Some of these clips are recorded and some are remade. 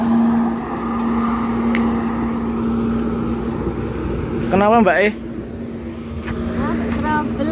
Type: recorded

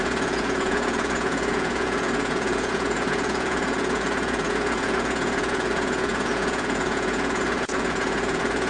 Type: remade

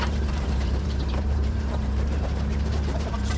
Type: remade